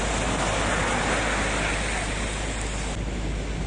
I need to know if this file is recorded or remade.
recorded